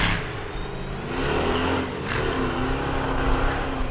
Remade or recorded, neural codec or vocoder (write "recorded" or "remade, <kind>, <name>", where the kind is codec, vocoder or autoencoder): recorded